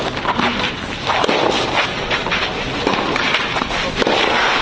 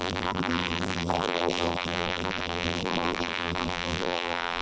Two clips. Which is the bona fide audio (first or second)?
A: first